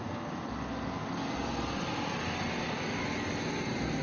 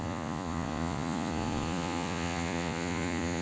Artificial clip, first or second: second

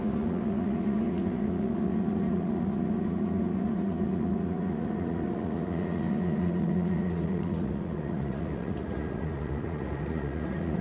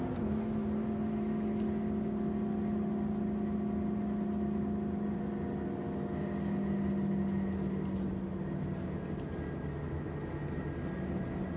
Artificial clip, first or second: first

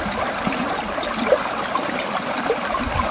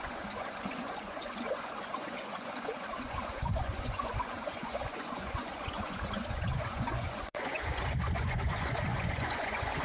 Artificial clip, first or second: second